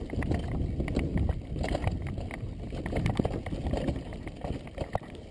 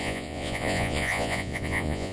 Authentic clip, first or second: first